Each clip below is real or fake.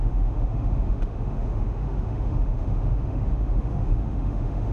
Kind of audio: fake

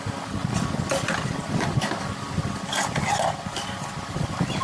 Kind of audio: real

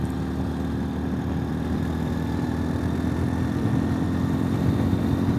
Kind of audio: real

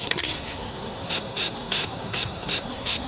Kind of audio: fake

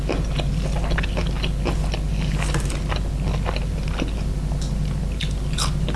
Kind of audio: real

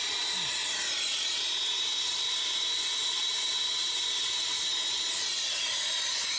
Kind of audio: real